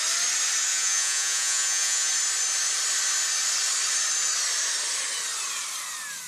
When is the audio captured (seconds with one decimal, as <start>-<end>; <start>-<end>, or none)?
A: 0.0-0.7; 2.1-6.3